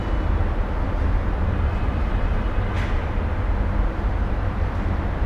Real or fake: real